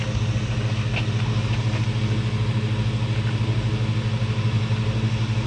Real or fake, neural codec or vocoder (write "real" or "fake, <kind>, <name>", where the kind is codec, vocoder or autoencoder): real